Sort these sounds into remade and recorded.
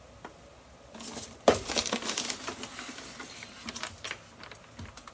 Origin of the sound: recorded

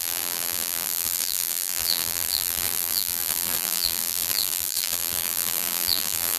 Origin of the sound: remade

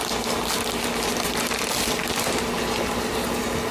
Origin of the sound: recorded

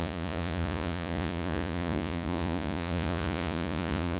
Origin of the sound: remade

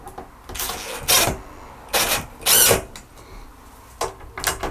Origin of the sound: recorded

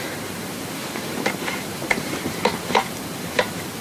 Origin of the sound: remade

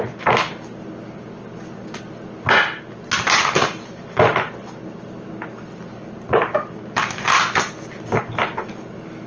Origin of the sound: recorded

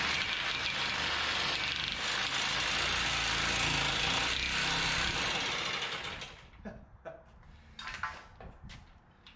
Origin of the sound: recorded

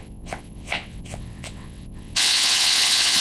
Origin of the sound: remade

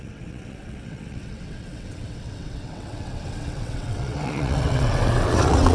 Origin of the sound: remade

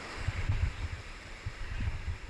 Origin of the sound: remade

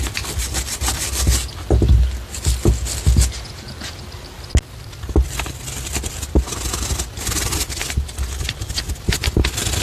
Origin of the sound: recorded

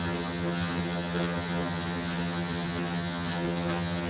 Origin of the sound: remade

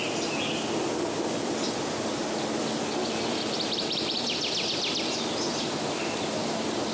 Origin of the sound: recorded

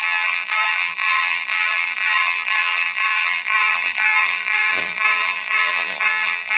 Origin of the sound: remade